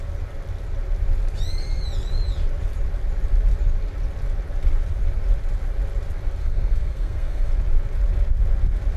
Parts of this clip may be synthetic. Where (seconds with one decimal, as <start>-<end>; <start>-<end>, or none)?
6.4-7.5